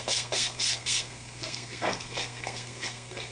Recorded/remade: remade